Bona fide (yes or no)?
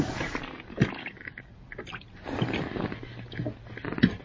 yes